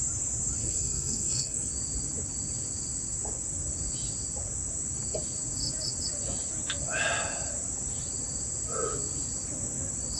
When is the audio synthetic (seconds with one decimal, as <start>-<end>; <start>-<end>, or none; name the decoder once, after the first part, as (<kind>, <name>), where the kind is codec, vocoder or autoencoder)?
0.6-1.7 (codec, SNAC)